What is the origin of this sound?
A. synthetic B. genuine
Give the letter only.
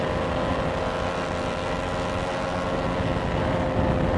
B